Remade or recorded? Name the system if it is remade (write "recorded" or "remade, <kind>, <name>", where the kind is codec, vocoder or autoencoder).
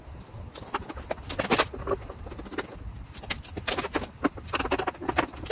recorded